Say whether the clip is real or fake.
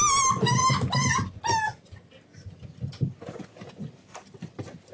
real